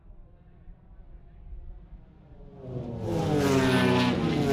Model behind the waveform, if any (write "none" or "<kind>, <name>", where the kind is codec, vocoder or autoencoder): none